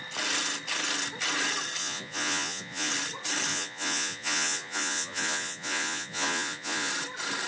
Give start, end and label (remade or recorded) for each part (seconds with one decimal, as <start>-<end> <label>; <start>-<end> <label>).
0.0-1.8 recorded; 1.8-2.9 remade; 2.9-3.5 recorded; 3.5-6.9 remade; 6.9-7.5 recorded